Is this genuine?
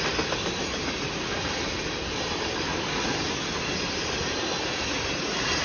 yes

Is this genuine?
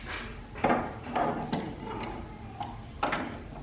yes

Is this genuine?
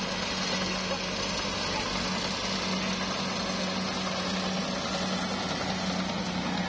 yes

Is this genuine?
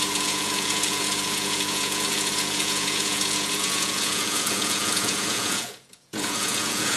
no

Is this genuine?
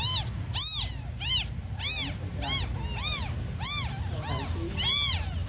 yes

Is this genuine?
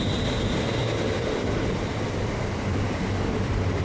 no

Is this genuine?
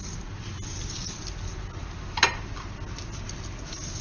yes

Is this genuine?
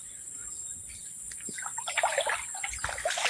yes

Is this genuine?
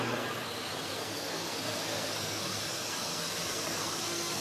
no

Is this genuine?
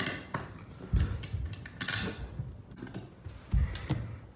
yes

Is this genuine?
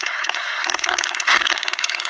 no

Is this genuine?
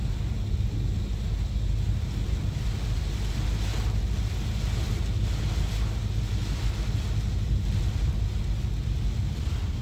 yes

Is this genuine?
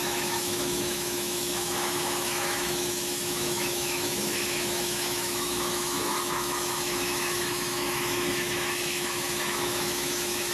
no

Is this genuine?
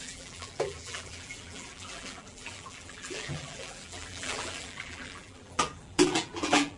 no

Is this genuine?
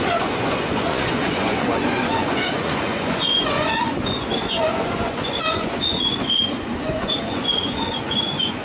no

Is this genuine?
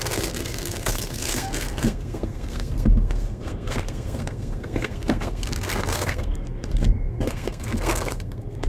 no